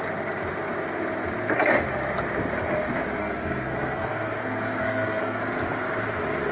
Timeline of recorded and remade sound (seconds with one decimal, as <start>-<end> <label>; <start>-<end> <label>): 0.0-3.2 recorded; 3.2-5.4 remade; 5.4-6.5 recorded